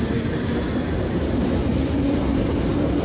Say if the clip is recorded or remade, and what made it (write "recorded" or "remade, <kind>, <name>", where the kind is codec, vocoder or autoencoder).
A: remade, vocoder, BigVGAN v2